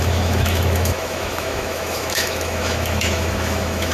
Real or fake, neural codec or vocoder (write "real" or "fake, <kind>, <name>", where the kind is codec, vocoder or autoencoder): fake, autoencoder, DAC-VAE